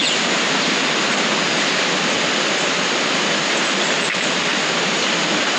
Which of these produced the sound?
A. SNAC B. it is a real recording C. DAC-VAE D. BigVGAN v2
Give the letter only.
B